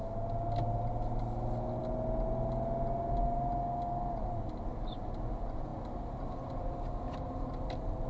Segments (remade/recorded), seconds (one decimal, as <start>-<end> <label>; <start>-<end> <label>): 0.0-8.1 recorded